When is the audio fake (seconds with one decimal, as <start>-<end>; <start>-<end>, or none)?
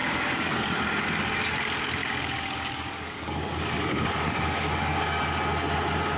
0.0-0.7; 2.0-5.2